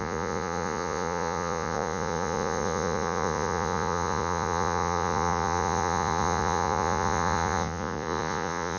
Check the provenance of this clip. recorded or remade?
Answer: remade